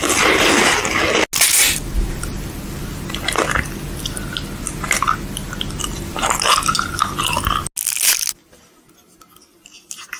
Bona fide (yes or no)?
yes